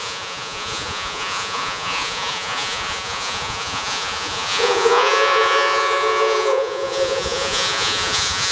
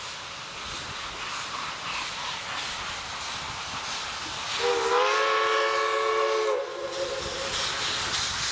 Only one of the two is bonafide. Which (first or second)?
second